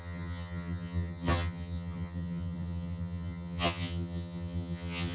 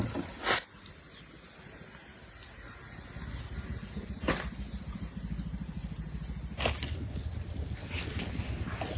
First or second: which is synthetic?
first